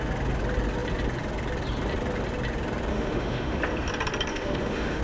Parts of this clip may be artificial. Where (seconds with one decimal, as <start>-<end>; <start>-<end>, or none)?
2.9-3.6; 4.3-5.0